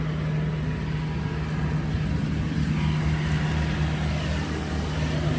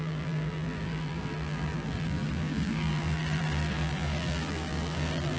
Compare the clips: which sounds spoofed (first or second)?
second